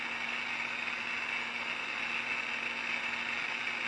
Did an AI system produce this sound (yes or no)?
no